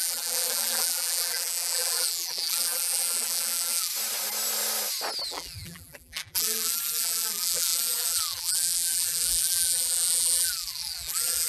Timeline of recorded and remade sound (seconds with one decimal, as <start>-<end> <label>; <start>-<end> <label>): 0.0-3.9 remade; 3.9-5.3 recorded; 5.3-11.5 remade